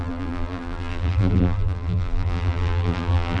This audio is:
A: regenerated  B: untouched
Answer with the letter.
A